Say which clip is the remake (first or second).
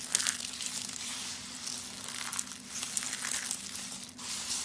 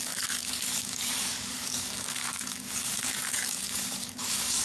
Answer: second